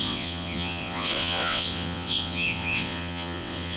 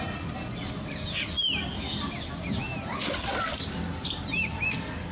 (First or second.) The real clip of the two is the second